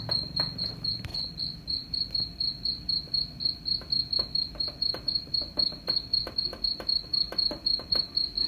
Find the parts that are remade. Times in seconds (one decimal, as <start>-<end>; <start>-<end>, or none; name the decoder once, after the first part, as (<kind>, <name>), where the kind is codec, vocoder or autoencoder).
none